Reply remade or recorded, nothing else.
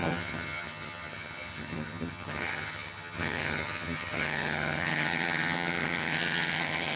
remade